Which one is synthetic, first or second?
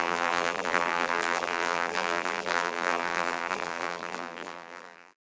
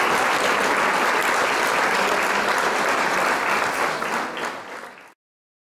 first